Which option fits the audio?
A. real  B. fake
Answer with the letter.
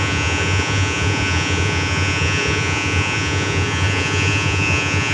B